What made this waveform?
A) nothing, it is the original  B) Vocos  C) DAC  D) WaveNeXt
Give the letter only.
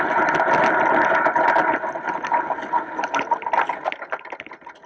A